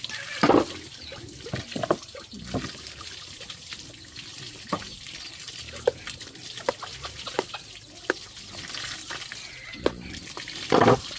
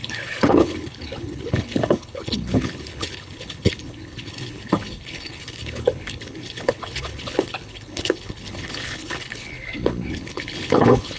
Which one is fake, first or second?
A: second